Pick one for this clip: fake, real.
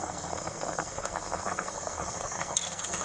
fake